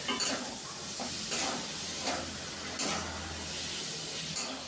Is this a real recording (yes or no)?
yes